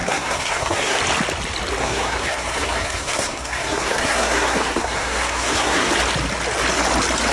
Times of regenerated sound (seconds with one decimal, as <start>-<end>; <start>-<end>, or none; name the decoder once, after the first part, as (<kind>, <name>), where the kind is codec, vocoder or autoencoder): 0.0-1.0 (codec, SNAC); 1.8-5.9